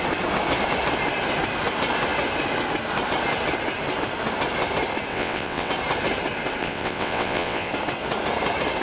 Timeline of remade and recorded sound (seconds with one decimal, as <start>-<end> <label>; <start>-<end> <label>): 0.0-5.1 recorded; 5.1-5.7 remade; 5.7-6.6 recorded; 6.6-7.7 remade; 7.7-8.8 recorded